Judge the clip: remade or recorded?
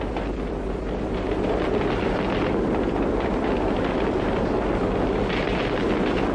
remade